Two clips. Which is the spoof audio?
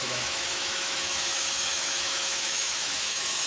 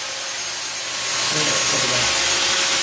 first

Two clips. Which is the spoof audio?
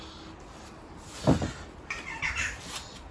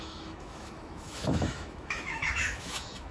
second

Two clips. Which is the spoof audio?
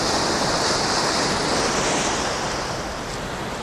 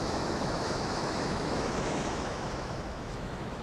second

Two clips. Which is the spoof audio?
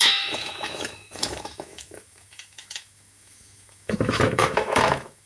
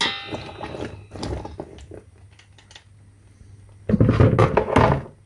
first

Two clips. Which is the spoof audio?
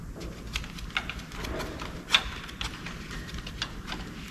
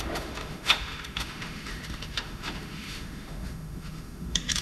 second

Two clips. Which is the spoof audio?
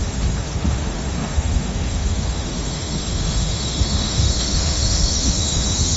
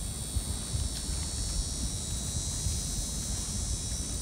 first